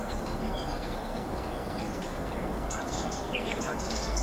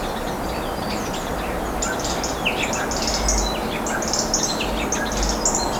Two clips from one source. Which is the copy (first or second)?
first